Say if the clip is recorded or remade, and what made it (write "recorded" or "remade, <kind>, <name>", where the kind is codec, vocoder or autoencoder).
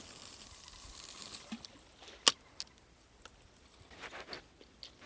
recorded